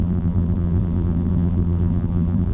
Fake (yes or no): yes